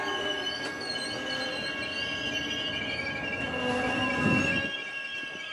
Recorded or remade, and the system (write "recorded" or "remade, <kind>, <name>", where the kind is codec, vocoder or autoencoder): recorded